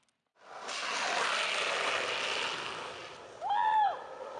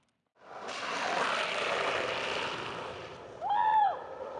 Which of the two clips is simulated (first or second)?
second